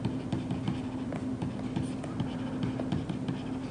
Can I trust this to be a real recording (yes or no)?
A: yes